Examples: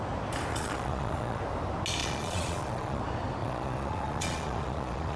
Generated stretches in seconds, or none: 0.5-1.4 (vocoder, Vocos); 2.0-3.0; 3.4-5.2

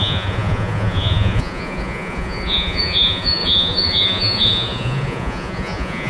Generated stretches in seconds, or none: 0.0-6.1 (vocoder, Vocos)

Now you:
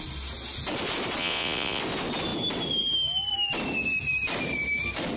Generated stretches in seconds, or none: 1.2-1.8 (vocoder, Vocos)

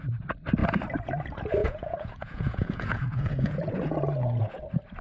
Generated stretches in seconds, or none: 1.6-4.6 (vocoder, Vocos)